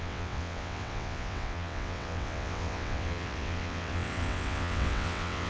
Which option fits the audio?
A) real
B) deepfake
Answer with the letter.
B